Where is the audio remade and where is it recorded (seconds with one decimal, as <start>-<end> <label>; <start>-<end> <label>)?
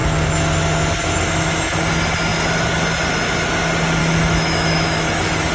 0.0-4.0 recorded; 4.0-5.5 remade